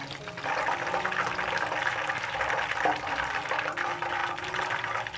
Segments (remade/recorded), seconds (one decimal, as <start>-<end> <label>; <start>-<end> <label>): 0.0-5.2 recorded